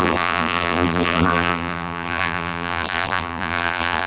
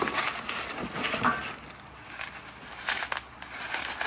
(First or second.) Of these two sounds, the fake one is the first